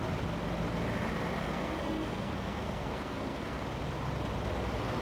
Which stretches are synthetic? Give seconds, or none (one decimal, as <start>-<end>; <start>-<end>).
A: 1.4-3.6